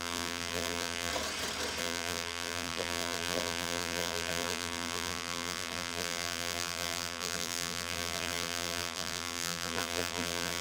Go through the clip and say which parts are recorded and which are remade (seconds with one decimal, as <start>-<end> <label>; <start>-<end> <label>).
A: 0.0-1.1 remade; 1.1-1.8 recorded; 1.8-10.6 remade